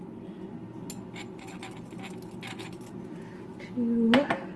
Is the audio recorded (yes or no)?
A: yes